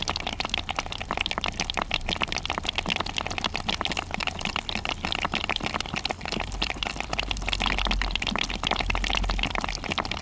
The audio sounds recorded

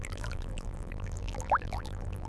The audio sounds remade